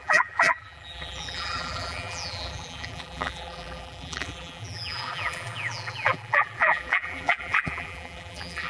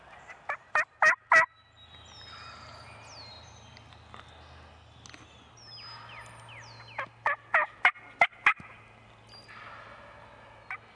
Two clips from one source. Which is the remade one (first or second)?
first